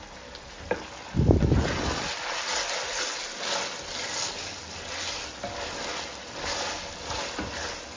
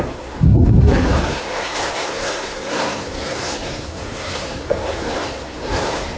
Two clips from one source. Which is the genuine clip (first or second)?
first